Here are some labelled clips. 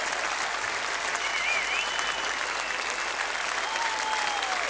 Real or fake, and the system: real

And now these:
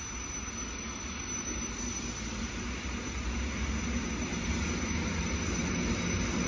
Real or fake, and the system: real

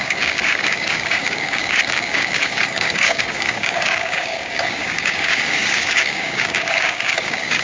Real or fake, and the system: fake, codec, DAC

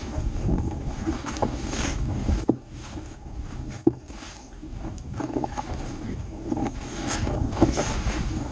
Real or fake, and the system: fake, codec, DAC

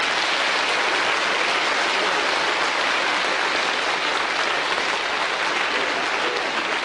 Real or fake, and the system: real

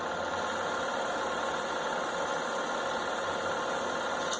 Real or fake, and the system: real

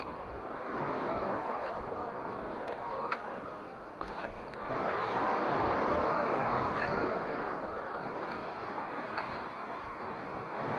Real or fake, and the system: fake, codec, DAC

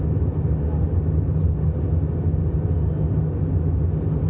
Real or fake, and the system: real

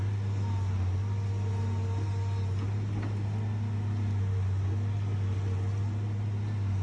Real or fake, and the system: real